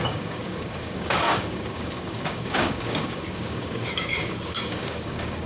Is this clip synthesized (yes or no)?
yes